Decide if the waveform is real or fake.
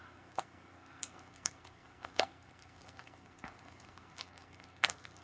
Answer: fake